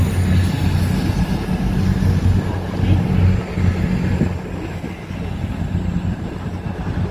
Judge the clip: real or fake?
real